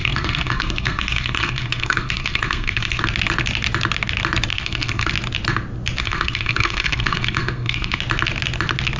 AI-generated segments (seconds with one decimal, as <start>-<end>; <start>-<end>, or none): 0.0-3.0; 4.5-5.1; 6.0-8.0